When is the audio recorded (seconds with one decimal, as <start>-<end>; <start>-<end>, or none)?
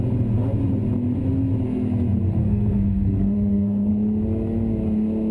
0.0-2.4; 3.9-5.3